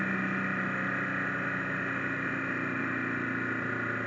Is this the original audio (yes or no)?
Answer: yes